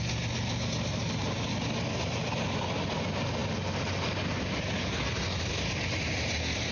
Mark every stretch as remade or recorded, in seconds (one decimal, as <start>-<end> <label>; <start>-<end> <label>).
0.0-6.7 recorded